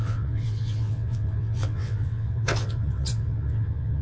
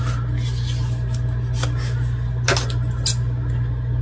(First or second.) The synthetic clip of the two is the first